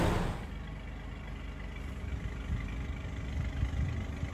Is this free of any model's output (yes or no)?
yes